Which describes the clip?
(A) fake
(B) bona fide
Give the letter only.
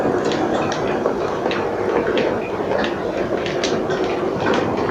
B